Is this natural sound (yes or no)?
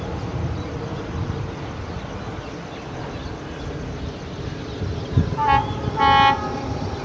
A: yes